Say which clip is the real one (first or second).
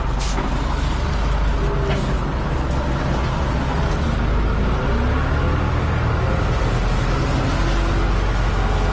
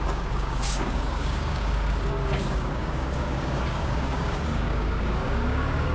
first